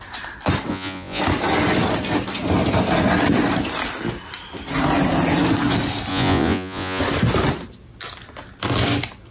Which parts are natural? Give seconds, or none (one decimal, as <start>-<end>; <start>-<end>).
0.0-0.7; 1.2-6.1; 7.0-9.3